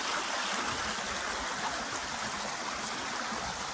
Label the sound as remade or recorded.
recorded